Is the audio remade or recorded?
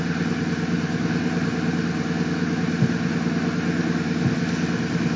recorded